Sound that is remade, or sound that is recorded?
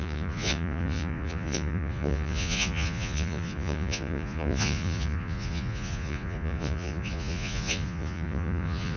remade